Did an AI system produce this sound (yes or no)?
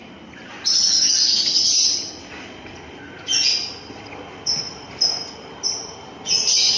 no